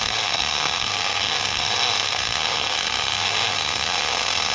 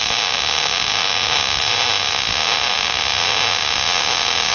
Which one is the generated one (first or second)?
first